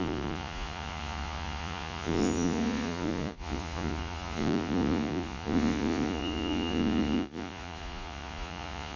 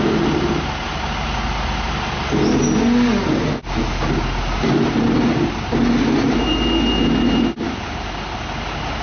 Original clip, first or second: second